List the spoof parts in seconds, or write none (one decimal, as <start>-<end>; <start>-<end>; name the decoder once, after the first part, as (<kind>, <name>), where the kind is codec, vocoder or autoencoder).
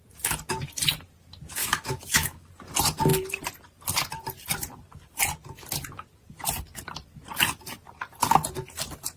1.6-2.5 (autoencoder, DAC-VAE)